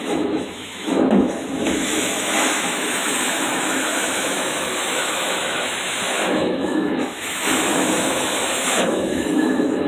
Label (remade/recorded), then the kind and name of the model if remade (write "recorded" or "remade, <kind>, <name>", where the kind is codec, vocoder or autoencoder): remade, autoencoder, DAC-VAE